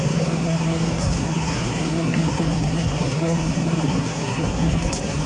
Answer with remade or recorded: remade